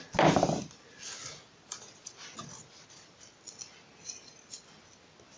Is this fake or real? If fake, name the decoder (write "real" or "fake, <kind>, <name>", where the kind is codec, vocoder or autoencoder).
real